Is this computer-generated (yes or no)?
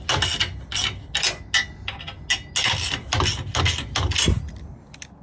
no